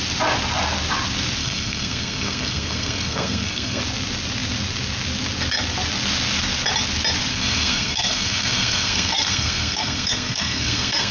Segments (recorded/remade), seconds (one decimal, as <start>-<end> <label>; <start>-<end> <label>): 0.0-1.4 recorded; 1.4-3.8 remade; 3.8-7.3 recorded; 7.3-11.1 remade